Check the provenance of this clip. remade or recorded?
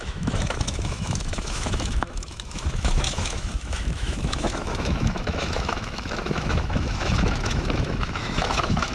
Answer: remade